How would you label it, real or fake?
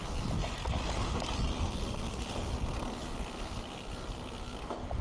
real